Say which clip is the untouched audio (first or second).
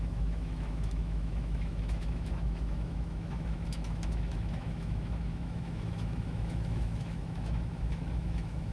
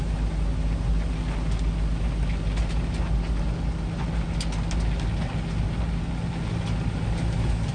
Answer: second